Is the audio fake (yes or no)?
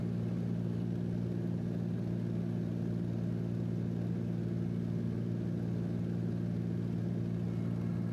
no